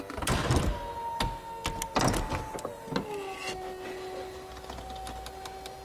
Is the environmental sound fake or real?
real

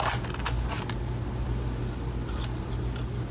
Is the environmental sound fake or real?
real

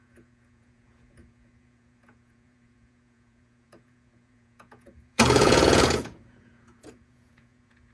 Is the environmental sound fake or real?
fake